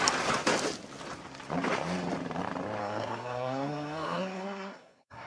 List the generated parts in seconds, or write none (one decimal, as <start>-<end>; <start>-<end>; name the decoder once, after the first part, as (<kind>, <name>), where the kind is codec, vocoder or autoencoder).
2.8-5.3 (codec, SNAC)